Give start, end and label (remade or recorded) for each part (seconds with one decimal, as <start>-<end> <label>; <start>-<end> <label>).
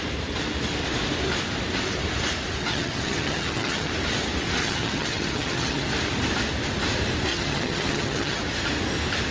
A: 0.0-2.7 recorded; 2.7-3.9 remade; 3.9-4.6 recorded; 4.6-5.9 remade; 5.9-7.3 recorded; 7.3-8.4 remade; 8.4-9.3 recorded